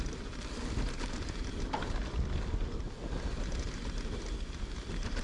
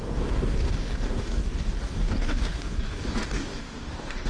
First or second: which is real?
first